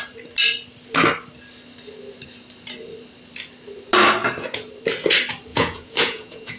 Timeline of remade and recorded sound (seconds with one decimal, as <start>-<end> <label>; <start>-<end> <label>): 0.0-5.5 recorded; 5.5-6.6 remade